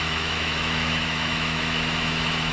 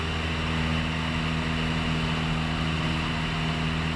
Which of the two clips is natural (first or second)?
second